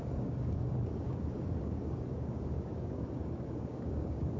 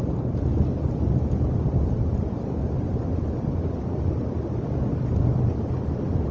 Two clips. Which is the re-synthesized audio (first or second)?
first